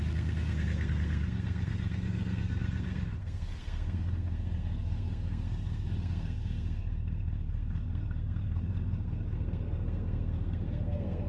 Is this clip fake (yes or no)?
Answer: yes